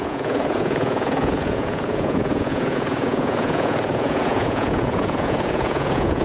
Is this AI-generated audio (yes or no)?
yes